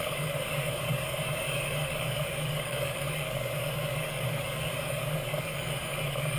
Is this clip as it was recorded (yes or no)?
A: no